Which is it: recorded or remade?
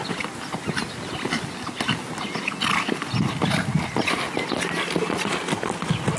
recorded